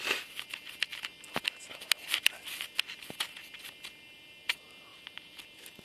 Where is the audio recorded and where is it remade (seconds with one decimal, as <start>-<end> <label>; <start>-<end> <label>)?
0.0-4.9 recorded; 4.9-5.8 remade